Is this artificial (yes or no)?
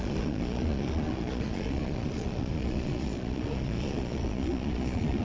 yes